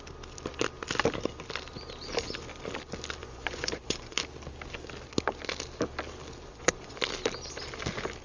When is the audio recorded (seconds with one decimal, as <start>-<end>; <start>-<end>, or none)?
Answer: 0.0-3.2; 4.2-6.5; 7.0-8.2